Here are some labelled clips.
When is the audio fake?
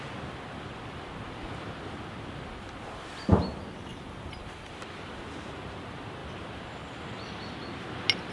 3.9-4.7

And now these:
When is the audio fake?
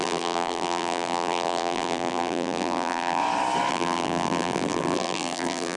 0.0-3.2; 3.7-5.8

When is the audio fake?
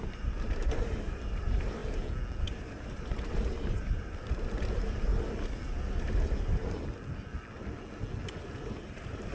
0.0-1.8; 2.4-5.1; 8.8-9.3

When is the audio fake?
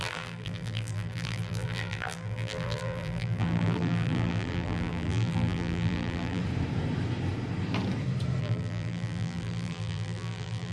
0.0-6.4; 8.4-10.7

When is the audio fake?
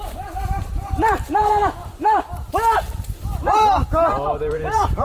0.0-2.4; 4.5-5.0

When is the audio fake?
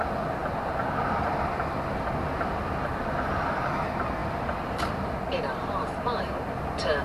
4.2-5.1